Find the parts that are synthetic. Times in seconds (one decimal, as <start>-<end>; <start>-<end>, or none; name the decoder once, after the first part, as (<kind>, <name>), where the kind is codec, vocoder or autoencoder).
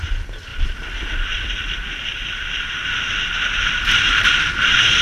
0.5-2.9 (vocoder, BigVGAN v2); 3.9-4.5